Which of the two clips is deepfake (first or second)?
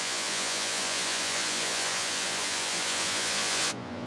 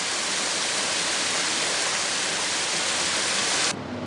first